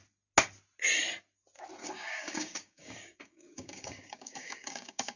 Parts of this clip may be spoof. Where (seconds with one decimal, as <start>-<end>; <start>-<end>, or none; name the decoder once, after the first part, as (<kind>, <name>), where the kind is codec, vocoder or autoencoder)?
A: 1.8-5.2 (codec, DAC)

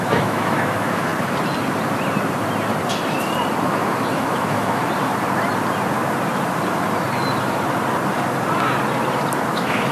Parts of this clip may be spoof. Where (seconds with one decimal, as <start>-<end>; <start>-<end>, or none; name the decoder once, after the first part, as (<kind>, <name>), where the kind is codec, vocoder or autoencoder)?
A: 0.0-1.1 (autoencoder, DAC-VAE); 3.6-4.8; 9.5-9.9

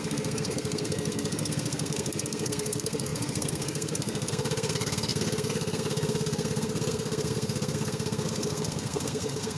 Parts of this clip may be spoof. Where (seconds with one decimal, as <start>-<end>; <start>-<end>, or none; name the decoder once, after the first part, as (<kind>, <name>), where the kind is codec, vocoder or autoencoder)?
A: 0.0-9.6 (codec, SNAC)

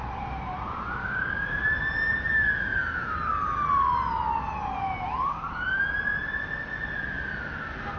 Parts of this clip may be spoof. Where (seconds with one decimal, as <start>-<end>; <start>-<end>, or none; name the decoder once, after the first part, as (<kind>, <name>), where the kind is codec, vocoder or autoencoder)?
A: 1.0-1.6 (codec, DAC); 5.3-5.8

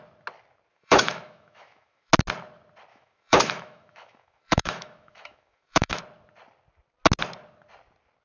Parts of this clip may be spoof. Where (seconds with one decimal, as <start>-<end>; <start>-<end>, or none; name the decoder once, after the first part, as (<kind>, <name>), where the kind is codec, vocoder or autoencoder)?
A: 0.7-2.1 (autoencoder, DAC-VAE); 2.9-6.0

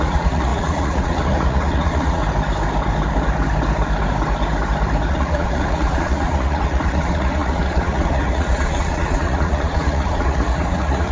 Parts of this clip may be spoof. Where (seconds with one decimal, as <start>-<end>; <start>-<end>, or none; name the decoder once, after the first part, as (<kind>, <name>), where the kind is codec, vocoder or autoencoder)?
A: 0.0-2.2 (vocoder, Vocos); 5.1-11.1

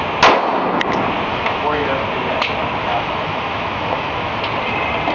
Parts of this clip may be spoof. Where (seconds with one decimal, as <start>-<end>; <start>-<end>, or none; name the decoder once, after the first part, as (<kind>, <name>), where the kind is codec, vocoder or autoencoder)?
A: 1.3-1.9 (autoencoder, DAC-VAE); 2.8-4.4